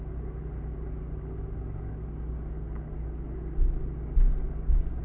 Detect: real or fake real